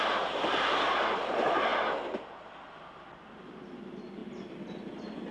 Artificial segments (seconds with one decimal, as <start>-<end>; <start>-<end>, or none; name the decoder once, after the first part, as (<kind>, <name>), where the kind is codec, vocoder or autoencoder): none